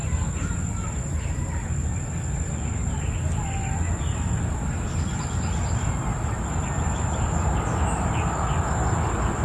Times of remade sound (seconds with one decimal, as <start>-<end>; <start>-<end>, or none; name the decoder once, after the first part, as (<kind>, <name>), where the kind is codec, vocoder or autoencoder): 4.1-5.9 (vocoder, BigVGAN v2)